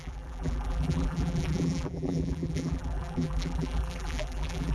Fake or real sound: fake